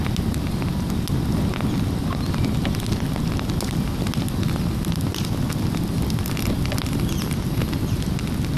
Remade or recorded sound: recorded